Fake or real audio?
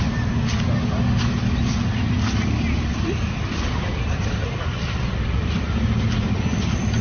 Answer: real